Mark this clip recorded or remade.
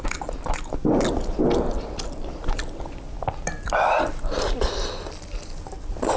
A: recorded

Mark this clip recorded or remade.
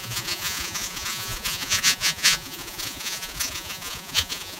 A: remade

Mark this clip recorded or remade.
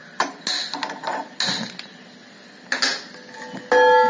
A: recorded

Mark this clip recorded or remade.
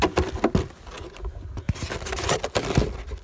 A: recorded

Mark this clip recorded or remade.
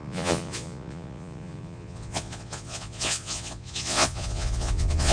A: remade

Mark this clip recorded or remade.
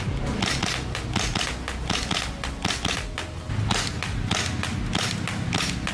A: recorded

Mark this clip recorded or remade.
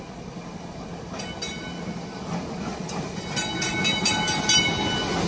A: recorded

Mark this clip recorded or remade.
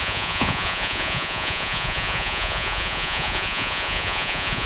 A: remade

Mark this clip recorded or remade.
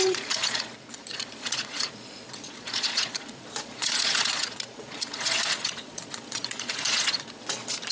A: remade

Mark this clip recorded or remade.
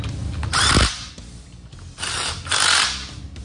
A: recorded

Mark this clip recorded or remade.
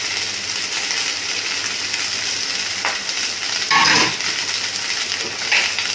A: recorded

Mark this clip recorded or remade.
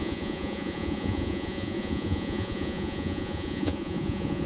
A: remade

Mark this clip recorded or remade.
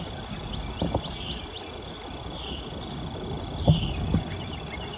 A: recorded